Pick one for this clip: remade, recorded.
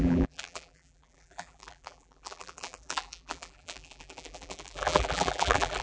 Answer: remade